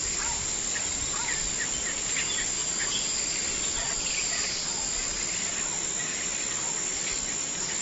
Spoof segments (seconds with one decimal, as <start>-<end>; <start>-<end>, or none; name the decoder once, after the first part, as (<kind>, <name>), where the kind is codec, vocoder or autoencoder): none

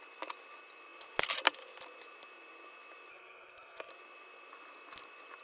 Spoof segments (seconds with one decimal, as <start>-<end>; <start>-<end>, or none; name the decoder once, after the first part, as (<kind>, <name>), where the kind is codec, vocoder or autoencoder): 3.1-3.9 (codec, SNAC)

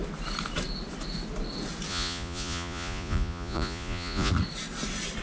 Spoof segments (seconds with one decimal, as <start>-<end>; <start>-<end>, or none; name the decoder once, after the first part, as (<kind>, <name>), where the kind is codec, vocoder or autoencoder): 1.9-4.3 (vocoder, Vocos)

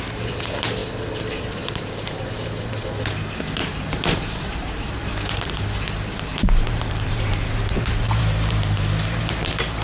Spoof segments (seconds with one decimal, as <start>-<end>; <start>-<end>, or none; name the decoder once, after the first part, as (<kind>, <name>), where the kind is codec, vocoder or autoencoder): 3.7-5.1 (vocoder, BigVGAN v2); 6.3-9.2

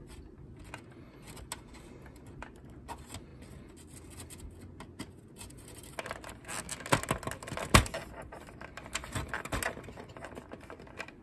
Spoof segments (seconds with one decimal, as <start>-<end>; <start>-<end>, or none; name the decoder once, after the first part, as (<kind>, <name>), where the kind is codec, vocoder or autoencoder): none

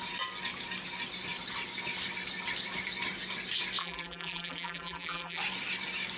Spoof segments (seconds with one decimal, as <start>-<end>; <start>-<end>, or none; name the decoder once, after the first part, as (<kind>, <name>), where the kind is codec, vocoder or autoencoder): 3.8-5.4 (vocoder, BigVGAN v2)